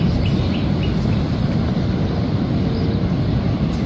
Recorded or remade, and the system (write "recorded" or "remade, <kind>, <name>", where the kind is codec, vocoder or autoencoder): recorded